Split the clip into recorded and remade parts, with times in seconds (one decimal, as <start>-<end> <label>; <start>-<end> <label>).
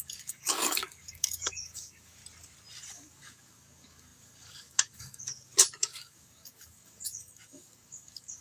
0.0-2.2 remade; 2.2-2.9 recorded; 2.9-8.4 remade